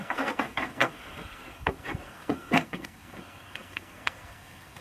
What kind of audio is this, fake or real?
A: fake